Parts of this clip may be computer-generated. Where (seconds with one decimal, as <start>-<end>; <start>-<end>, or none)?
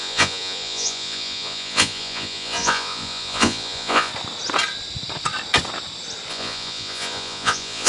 0.0-4.1; 6.3-7.9